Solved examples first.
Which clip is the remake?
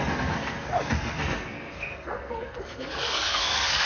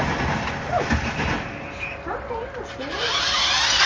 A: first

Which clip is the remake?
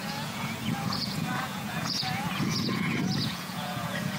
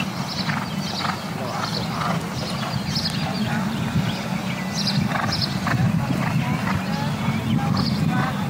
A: first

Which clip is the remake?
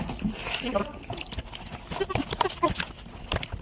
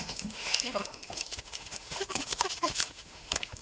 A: second